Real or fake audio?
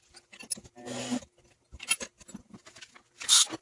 real